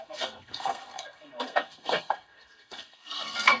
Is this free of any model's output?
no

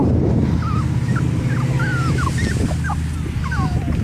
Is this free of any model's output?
yes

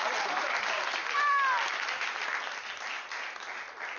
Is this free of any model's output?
yes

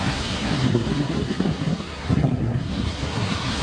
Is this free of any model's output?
no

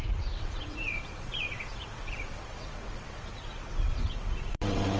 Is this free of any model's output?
no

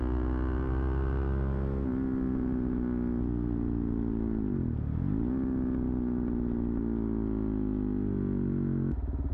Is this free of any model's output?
yes